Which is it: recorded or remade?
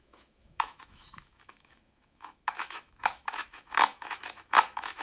remade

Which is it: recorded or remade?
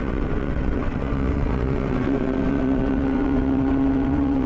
remade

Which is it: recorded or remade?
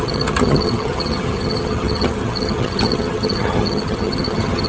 remade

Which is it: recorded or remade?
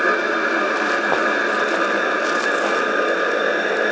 recorded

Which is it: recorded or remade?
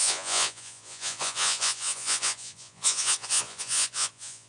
remade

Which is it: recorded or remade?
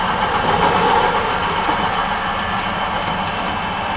recorded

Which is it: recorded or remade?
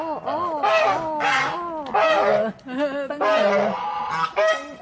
recorded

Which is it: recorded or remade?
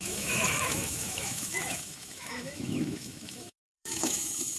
remade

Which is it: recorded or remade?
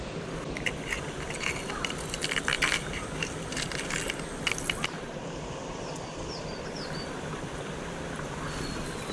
recorded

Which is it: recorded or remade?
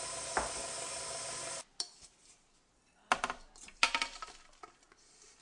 recorded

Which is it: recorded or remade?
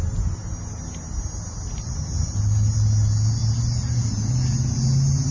recorded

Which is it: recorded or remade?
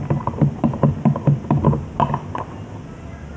recorded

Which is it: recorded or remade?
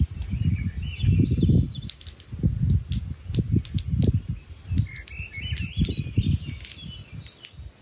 recorded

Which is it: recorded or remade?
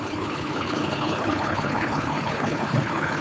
remade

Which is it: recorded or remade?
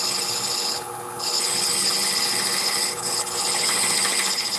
remade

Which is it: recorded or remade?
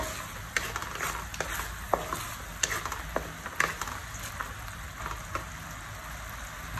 recorded